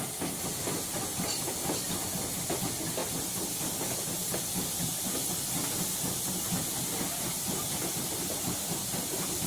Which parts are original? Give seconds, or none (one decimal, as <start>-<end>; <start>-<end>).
0.0-9.5